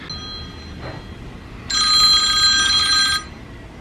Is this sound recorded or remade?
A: recorded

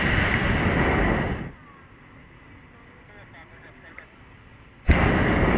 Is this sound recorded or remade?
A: recorded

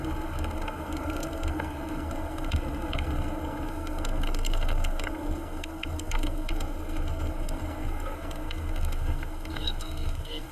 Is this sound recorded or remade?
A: remade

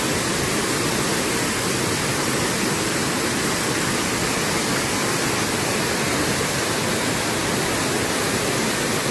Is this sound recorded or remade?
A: recorded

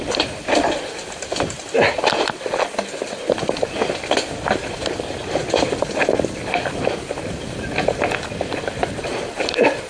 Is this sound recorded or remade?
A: recorded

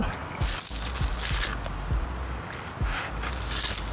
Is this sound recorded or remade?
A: recorded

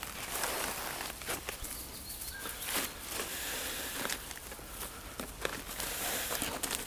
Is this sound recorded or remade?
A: recorded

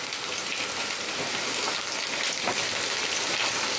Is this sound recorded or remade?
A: recorded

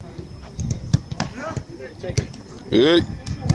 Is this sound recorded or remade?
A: recorded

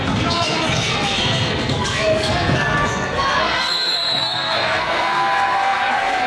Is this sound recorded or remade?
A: remade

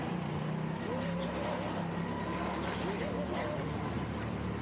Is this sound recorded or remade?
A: recorded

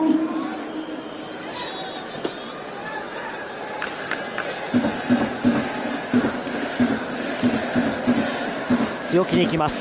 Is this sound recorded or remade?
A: recorded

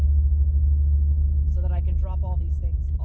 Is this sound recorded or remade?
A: recorded